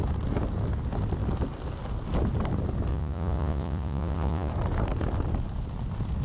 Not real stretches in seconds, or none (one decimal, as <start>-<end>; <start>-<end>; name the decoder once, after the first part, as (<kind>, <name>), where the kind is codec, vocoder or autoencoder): 2.9-4.5 (vocoder, Vocos)